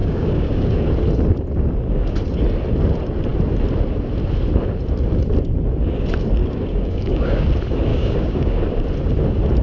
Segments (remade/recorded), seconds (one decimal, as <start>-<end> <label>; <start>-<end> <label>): 0.0-0.8 remade; 0.8-6.4 recorded; 6.4-7.5 remade; 7.5-7.9 recorded; 7.9-8.6 remade; 8.6-9.6 recorded